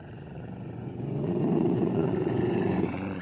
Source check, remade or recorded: remade